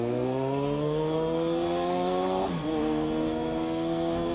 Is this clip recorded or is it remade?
remade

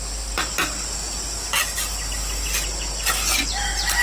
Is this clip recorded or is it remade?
recorded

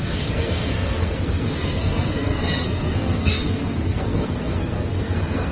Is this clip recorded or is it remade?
remade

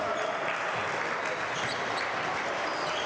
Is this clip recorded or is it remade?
recorded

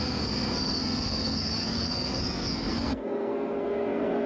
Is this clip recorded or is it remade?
remade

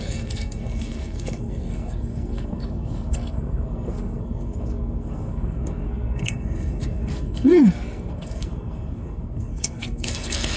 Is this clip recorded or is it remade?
remade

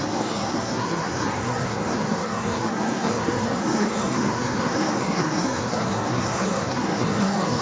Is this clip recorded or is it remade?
remade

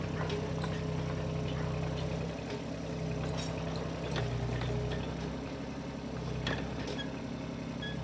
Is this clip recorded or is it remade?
recorded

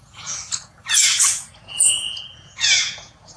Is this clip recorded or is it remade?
remade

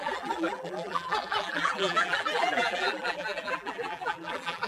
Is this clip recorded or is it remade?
remade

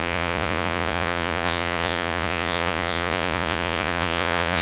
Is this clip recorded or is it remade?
remade